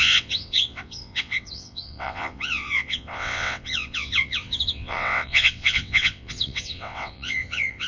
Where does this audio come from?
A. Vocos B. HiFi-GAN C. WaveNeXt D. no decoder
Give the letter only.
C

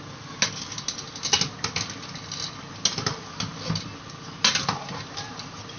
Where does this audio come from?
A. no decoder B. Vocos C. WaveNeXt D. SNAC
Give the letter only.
A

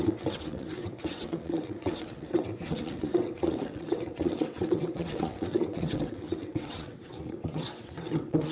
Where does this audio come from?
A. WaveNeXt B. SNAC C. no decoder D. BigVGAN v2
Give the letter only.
A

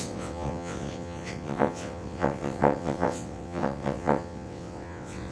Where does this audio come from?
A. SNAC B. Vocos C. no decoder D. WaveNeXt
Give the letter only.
D